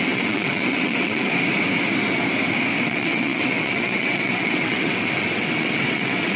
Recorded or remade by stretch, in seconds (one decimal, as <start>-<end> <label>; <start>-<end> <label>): 0.0-1.3 remade; 1.3-2.8 recorded; 2.8-6.4 remade